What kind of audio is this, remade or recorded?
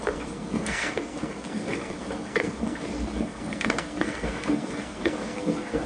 remade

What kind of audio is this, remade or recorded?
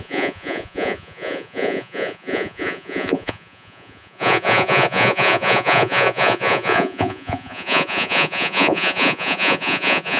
remade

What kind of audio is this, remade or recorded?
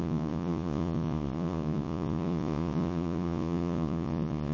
remade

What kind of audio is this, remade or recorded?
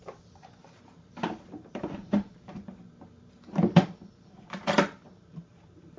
remade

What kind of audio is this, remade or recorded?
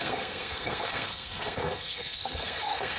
remade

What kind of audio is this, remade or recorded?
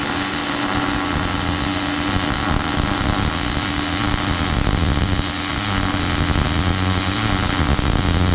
recorded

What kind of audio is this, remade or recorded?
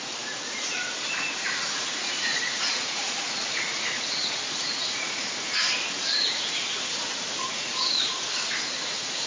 remade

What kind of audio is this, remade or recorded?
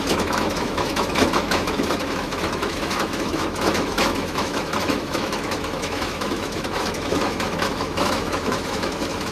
remade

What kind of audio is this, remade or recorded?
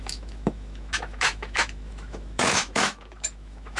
remade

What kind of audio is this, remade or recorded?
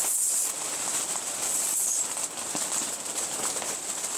recorded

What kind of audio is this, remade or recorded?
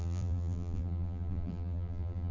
remade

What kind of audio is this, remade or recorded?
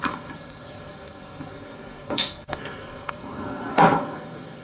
remade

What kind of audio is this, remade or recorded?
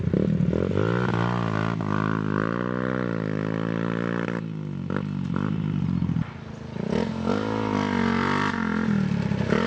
recorded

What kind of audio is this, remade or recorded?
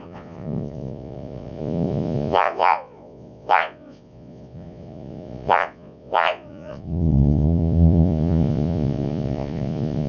remade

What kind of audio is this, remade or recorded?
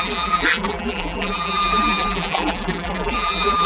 remade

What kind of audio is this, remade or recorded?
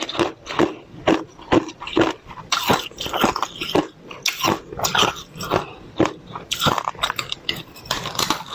recorded